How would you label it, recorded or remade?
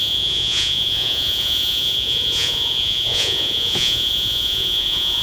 remade